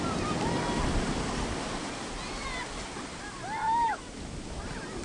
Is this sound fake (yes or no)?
no